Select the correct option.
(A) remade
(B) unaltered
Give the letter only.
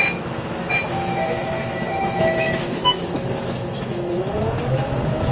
A